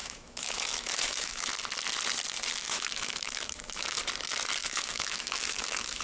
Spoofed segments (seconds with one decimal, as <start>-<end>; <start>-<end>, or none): 0.0-1.5; 2.6-4.0; 4.6-6.0